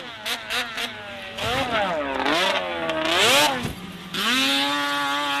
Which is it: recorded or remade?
recorded